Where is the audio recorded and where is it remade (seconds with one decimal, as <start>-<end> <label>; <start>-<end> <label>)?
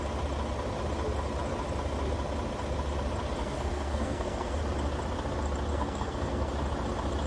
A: 0.0-3.4 recorded; 3.4-4.6 remade; 4.6-5.7 recorded; 5.7-6.5 remade; 6.5-7.3 recorded